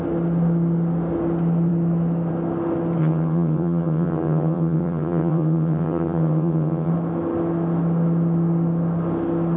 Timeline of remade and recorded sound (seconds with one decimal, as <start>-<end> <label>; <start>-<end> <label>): 0.0-3.0 recorded; 3.0-6.9 remade; 6.9-9.6 recorded